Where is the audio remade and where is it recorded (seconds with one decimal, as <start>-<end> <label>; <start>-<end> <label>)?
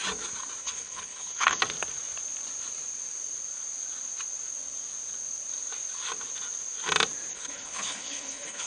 0.0-0.6 recorded; 0.6-1.6 remade; 1.6-7.3 recorded; 7.3-8.7 remade